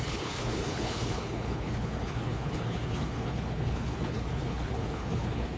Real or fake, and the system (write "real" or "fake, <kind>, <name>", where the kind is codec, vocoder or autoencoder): fake, codec, HILCodec